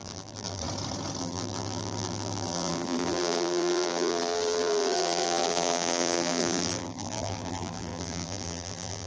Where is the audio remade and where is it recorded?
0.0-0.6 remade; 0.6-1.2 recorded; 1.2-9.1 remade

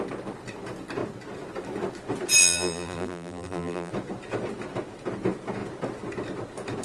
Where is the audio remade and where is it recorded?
0.0-2.4 recorded; 2.4-3.9 remade; 3.9-6.8 recorded

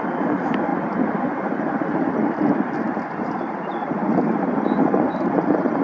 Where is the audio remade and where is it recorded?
0.0-0.7 remade; 0.7-2.1 recorded; 2.1-5.8 remade

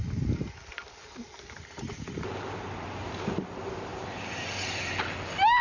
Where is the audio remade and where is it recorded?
0.0-2.1 remade; 2.1-3.9 recorded; 3.9-4.9 remade; 4.9-5.6 recorded

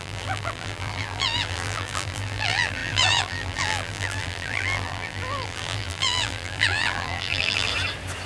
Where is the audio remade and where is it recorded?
0.0-7.7 remade; 7.7-8.3 recorded